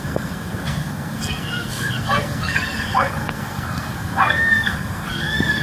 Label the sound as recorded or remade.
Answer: remade